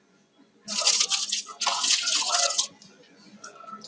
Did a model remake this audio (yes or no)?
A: yes